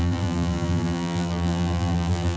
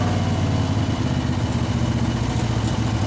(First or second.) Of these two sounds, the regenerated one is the first